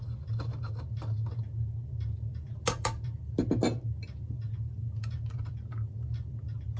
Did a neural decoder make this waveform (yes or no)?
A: no